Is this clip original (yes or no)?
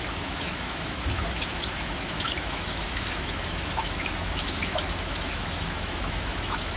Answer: no